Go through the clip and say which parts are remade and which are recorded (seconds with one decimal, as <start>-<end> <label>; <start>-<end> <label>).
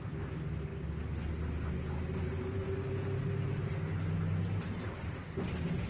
0.0-5.9 recorded